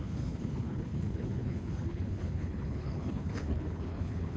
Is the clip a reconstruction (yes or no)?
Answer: yes